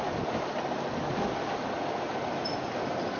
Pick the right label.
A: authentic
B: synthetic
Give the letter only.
A